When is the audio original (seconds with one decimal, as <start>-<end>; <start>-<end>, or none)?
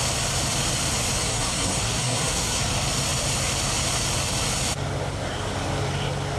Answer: 0.0-1.2; 2.6-6.4